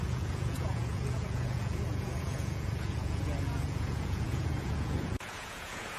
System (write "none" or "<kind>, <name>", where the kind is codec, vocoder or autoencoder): vocoder, Vocos